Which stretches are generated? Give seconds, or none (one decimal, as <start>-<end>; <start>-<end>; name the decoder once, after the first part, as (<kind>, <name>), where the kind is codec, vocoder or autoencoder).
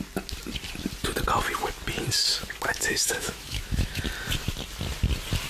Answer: 2.7-4.0 (autoencoder, DAC-VAE)